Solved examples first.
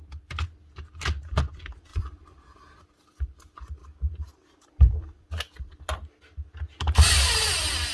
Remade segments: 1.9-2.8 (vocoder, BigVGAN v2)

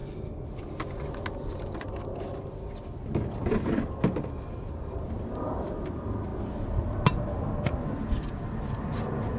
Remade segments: none

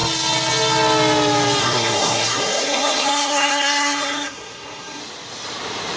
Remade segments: 1.6-5.0 (codec, SNAC)

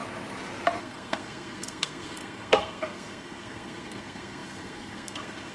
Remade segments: 0.8-5.5 (codec, SNAC)

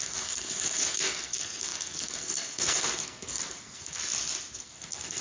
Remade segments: 0.0-4.0 (codec, SNAC); 4.6-5.2

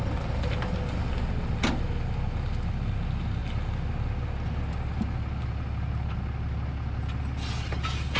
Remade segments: none